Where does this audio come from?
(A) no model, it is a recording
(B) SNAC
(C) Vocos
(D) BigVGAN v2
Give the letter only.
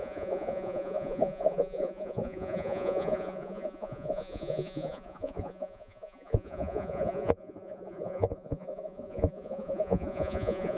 C